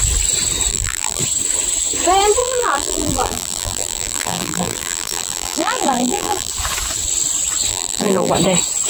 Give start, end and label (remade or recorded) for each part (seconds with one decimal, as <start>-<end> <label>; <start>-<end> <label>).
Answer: 0.0-0.7 recorded; 0.7-1.2 remade; 1.2-2.4 recorded; 2.4-6.5 remade; 6.5-7.7 recorded; 7.7-8.3 remade; 8.3-8.9 recorded